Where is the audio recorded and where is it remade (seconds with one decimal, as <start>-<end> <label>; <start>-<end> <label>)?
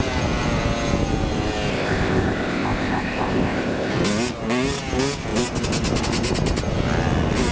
0.0-1.7 recorded; 1.7-3.9 remade; 3.9-7.5 recorded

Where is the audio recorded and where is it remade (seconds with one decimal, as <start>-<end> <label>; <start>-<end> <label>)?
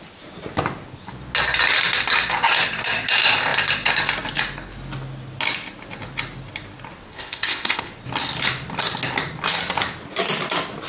0.0-7.1 recorded; 7.1-7.9 remade; 7.9-10.9 recorded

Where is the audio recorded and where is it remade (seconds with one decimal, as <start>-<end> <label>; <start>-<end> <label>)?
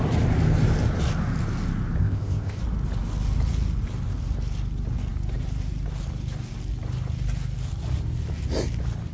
0.0-2.0 recorded; 2.0-2.6 remade; 2.6-9.1 recorded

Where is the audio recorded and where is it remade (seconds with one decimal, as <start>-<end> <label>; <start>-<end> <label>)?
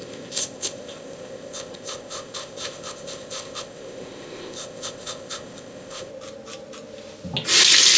0.0-6.1 remade; 6.1-8.0 recorded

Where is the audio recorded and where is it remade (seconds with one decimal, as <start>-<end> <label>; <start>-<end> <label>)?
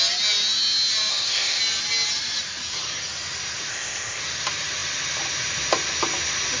0.0-1.1 recorded; 1.1-1.6 remade; 1.6-3.7 recorded; 3.7-4.2 remade; 4.2-6.6 recorded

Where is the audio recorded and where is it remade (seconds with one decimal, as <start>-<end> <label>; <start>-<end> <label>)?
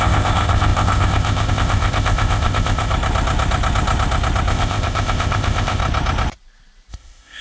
0.0-2.9 remade; 2.9-4.5 recorded; 4.5-5.8 remade; 5.8-6.9 recorded; 6.9-7.4 remade